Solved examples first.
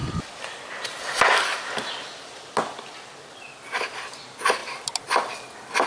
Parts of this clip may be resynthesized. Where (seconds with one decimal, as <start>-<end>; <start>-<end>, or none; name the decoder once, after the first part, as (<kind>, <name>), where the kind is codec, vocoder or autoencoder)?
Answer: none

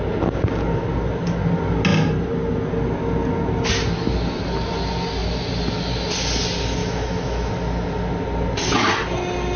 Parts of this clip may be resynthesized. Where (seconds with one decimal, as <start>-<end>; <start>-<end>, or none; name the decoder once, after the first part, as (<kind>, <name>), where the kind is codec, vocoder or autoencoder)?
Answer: 6.8-7.5 (autoencoder, DAC-VAE)

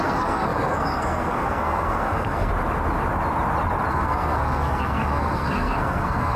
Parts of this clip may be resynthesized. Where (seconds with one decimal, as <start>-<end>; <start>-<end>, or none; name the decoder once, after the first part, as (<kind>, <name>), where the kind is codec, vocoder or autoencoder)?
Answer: 0.0-2.5 (codec, SNAC); 3.9-6.4

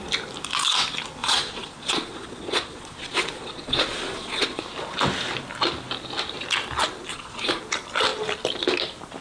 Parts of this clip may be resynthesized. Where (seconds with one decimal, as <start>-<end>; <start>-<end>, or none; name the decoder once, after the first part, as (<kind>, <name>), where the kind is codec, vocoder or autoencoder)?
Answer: 1.2-4.6 (vocoder, Vocos); 7.1-7.6

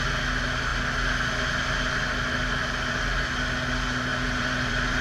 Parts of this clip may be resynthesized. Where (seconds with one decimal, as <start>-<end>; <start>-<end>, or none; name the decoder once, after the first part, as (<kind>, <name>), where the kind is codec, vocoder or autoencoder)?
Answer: 4.1-5.0 (vocoder, BigVGAN v2)